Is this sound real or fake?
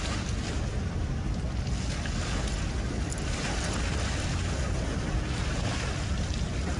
real